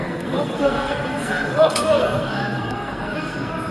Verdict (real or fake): fake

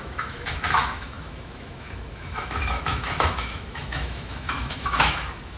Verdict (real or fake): fake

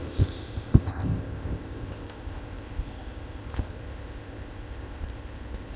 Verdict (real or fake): fake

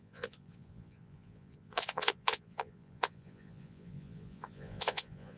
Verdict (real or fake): fake